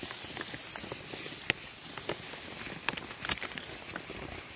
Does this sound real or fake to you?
real